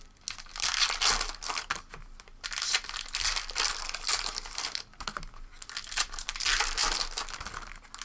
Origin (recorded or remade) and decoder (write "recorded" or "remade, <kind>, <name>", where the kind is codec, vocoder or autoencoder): recorded